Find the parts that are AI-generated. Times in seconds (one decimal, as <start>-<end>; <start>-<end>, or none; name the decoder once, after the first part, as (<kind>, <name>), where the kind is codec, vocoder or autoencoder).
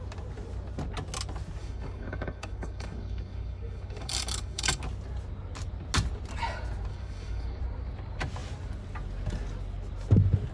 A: 1.6-4.8 (codec, DAC); 6.9-7.6